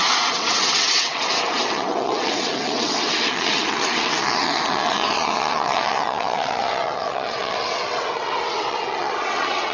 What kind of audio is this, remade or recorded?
remade